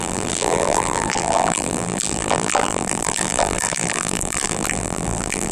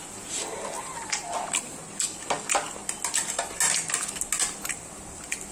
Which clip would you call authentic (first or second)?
second